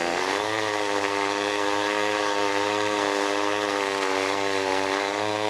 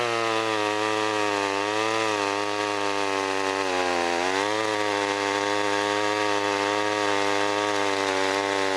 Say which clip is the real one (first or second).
second